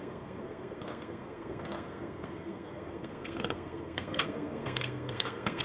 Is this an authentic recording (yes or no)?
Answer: no